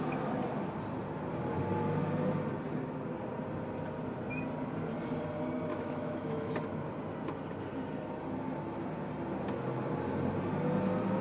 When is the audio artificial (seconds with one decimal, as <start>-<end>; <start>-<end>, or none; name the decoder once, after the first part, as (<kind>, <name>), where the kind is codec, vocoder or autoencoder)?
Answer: 5.7-6.5 (autoencoder, DAC-VAE)